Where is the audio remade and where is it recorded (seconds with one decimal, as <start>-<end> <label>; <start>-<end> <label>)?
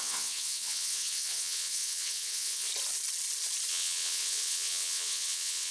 0.0-2.7 remade; 2.7-3.7 recorded; 3.7-5.7 remade